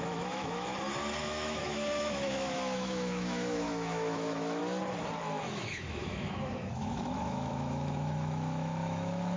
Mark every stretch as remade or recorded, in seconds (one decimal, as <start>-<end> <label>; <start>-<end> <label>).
0.0-0.7 remade; 0.7-1.2 recorded; 1.2-4.6 remade; 4.6-5.2 recorded; 5.2-9.4 remade